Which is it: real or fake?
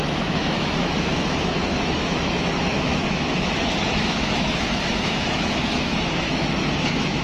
fake